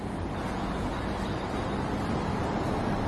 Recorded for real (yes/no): yes